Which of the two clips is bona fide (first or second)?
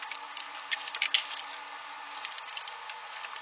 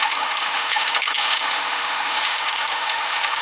first